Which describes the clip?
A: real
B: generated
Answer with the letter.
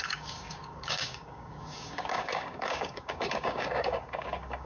B